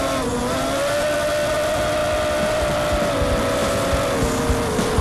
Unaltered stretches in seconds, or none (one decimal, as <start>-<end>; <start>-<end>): 0.0-5.0